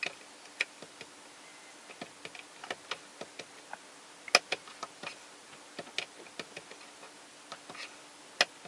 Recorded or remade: recorded